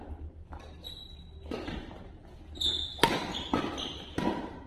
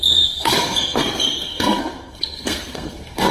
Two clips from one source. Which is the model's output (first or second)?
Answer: second